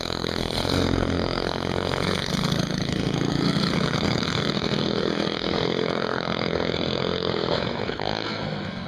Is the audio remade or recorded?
remade